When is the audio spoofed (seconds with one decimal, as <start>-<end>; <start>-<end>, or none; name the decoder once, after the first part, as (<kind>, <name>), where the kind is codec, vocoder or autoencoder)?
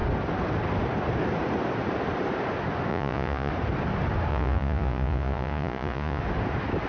2.9-3.5 (vocoder, Vocos); 4.3-6.2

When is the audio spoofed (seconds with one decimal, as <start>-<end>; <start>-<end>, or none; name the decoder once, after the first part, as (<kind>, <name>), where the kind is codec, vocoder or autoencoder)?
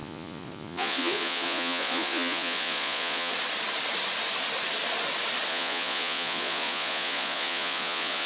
0.0-3.3 (vocoder, Vocos); 5.5-8.3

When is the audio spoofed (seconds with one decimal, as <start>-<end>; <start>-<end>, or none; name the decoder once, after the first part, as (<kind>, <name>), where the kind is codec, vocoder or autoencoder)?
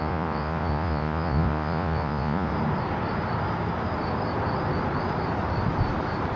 0.0-2.5 (vocoder, Vocos)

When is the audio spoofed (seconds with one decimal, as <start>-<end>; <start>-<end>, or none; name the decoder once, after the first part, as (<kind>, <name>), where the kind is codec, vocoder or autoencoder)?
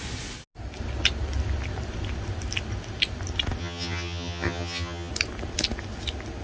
3.6-5.1 (vocoder, HiFi-GAN)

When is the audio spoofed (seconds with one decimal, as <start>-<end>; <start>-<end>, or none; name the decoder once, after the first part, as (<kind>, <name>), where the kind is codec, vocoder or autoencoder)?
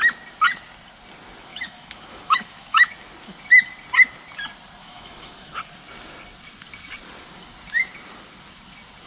1.5-2.9 (autoencoder, DAC-VAE); 4.8-5.6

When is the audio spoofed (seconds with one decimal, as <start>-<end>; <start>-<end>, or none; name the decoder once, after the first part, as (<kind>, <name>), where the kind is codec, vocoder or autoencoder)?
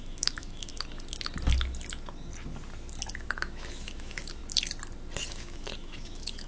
0.0-0.7 (autoencoder, DAC-VAE); 3.1-4.4; 5.3-6.5